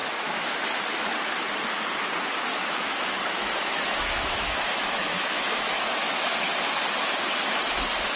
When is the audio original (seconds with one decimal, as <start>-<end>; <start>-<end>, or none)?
0.8-2.5; 6.5-8.2